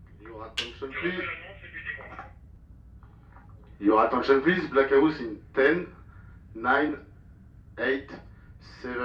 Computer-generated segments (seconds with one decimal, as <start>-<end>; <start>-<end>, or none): 1.4-2.5; 3.4-8.3